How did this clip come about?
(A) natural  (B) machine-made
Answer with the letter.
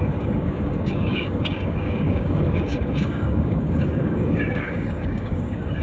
B